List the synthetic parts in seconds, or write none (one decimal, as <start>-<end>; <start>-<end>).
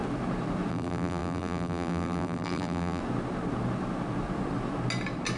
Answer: 0.7-3.0